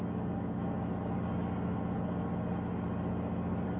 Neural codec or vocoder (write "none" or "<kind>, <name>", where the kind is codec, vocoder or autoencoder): none